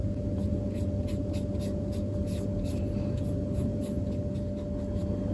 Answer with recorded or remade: recorded